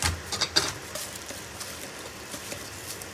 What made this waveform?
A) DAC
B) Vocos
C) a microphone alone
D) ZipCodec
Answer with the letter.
C